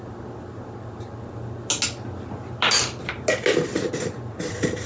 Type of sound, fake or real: real